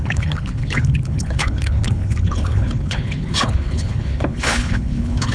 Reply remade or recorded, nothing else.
remade